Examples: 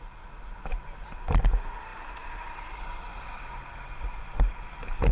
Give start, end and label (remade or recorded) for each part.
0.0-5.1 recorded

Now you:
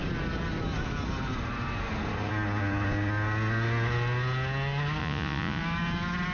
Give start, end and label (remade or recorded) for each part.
0.0-5.0 recorded; 5.0-5.6 remade; 5.6-6.3 recorded

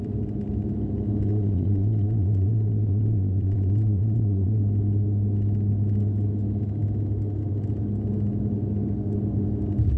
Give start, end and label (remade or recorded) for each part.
0.0-1.3 recorded; 1.3-4.6 remade; 4.6-10.0 recorded

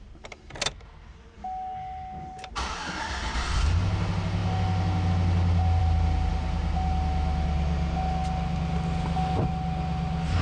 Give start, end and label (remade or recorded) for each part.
0.0-10.4 recorded

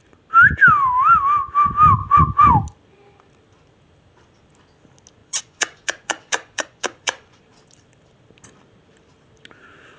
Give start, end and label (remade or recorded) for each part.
0.0-2.0 recorded; 2.0-2.5 remade; 2.5-5.2 recorded; 5.2-7.4 remade; 7.4-10.0 recorded

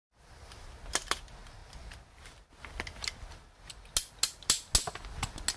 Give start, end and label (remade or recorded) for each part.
0.0-5.6 recorded

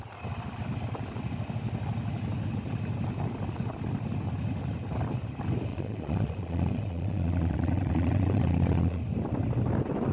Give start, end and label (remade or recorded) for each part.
0.0-5.7 recorded; 5.7-9.0 remade; 9.0-10.1 recorded

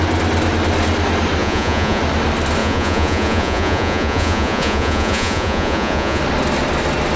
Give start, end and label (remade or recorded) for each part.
0.0-1.4 recorded; 1.4-2.0 remade; 2.0-2.6 recorded; 2.6-6.2 remade; 6.2-7.2 recorded